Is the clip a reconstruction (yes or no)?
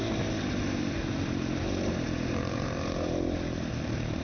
no